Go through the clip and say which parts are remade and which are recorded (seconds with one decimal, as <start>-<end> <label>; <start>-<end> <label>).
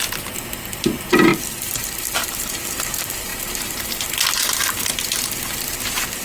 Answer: 0.0-1.3 recorded; 1.3-2.5 remade; 2.5-6.2 recorded